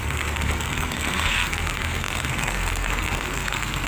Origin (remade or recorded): remade